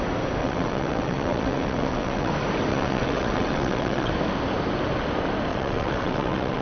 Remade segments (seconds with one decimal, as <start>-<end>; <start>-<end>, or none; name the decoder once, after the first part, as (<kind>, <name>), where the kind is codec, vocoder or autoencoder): 0.4-2.3 (vocoder, WaveNeXt); 2.7-4.1; 5.5-6.6